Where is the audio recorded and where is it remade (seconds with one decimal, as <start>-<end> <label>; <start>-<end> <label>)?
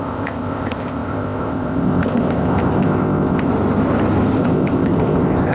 0.0-3.5 remade; 3.5-4.4 recorded; 4.4-5.5 remade